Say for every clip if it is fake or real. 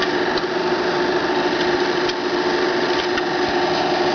real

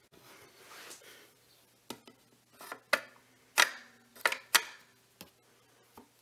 real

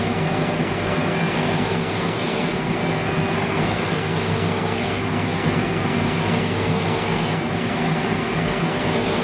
fake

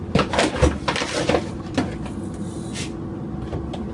fake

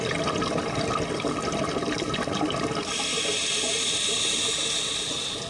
real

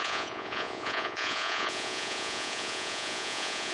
fake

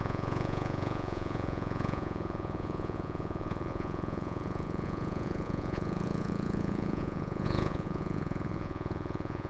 fake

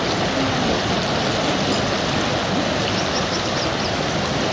real